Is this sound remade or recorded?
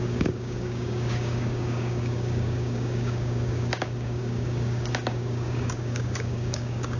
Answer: remade